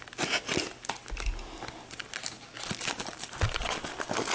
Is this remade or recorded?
recorded